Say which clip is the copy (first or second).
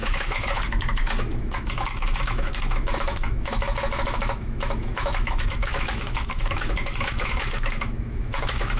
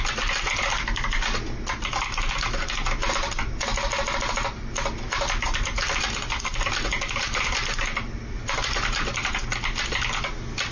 first